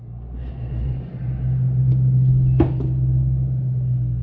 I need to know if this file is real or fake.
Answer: real